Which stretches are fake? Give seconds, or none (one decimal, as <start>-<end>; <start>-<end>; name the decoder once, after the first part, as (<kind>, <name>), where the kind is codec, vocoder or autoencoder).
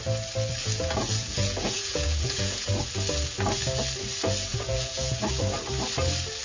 0.6-2.7 (vocoder, Vocos); 4.5-5.2